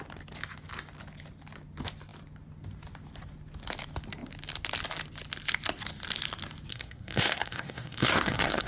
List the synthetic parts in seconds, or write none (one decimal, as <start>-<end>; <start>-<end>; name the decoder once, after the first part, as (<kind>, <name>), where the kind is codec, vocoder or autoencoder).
6.7-8.7 (codec, SNAC)